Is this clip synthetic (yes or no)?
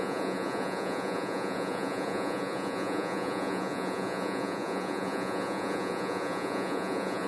yes